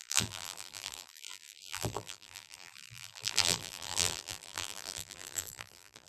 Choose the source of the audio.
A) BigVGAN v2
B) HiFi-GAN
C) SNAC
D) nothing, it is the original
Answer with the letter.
A